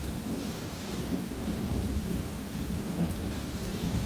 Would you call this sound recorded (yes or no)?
no